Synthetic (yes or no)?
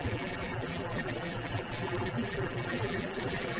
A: yes